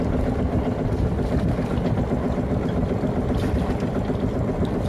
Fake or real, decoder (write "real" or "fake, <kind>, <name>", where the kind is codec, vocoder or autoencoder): real